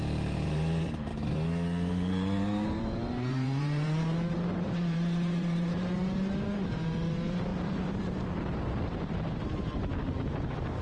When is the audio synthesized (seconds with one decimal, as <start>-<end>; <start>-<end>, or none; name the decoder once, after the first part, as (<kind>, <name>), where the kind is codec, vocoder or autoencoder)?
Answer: 0.0-1.1 (vocoder, BigVGAN v2); 1.9-10.8